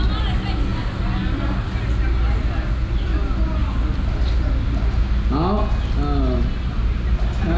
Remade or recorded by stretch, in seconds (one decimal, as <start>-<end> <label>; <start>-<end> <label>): 0.0-7.6 recorded

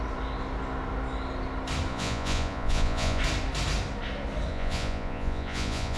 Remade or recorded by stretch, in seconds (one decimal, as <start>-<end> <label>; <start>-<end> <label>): 0.0-1.9 recorded; 1.9-3.2 remade; 3.2-4.5 recorded; 4.5-6.0 remade

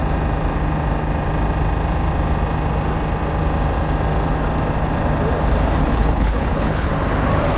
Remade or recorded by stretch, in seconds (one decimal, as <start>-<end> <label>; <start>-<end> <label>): 0.0-5.8 recorded; 5.8-6.9 remade; 6.9-7.6 recorded

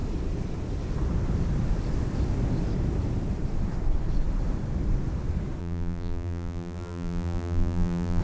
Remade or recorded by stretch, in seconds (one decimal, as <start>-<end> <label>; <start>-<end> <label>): 0.0-5.6 recorded; 5.6-8.2 remade

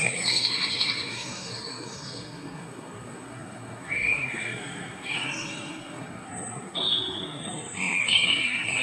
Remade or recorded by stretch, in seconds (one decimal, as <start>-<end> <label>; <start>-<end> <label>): 0.0-8.8 remade

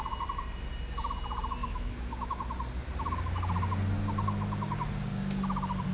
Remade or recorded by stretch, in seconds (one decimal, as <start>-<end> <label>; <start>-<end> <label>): 0.0-1.6 recorded; 1.6-2.4 remade; 2.4-5.9 recorded

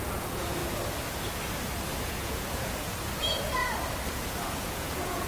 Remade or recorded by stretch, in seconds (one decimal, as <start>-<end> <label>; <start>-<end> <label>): 0.0-0.6 remade; 0.6-2.0 recorded; 2.0-3.6 remade; 3.6-4.1 recorded; 4.1-5.3 remade